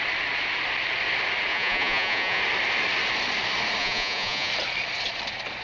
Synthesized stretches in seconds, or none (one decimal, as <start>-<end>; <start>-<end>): 1.5-2.4; 3.8-4.5